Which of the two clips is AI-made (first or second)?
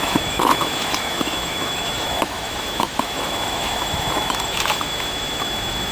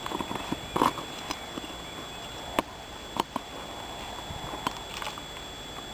first